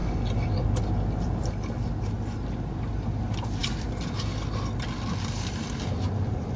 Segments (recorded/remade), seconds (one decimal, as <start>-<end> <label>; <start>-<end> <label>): 0.0-6.6 recorded